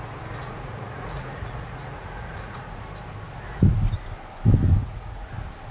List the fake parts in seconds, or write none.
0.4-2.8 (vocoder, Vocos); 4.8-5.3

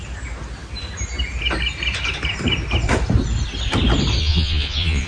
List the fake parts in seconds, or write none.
4.2-5.1 (vocoder, Vocos)

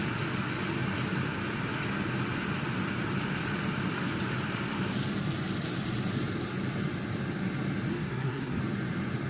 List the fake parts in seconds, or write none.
7.9-8.6 (codec, SNAC)

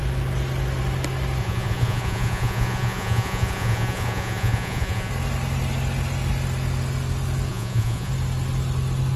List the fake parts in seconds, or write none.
1.4-5.1 (vocoder, Vocos); 7.5-8.1

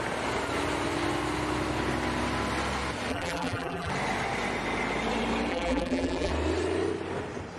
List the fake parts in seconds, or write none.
3.1-3.9 (vocoder, BigVGAN v2); 5.5-6.3

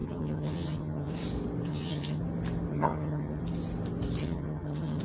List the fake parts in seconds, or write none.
0.0-1.1 (vocoder, HiFi-GAN); 1.7-2.2; 2.7-3.4; 4.2-5.0

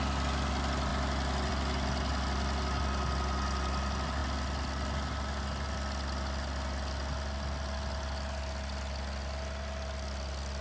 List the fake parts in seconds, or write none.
none

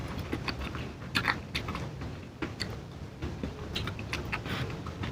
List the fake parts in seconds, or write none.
0.0-0.6 (vocoder, BigVGAN v2)